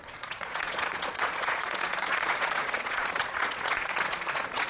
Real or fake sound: fake